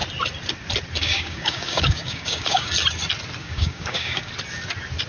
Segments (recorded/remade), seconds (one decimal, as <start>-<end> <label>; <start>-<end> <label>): 0.0-1.0 recorded; 1.0-2.7 remade; 2.7-3.4 recorded; 3.4-4.3 remade; 4.3-5.1 recorded